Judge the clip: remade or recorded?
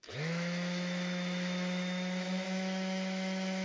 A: remade